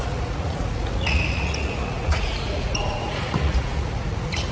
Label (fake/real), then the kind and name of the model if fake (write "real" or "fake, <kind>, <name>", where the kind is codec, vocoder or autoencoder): fake, vocoder, Vocos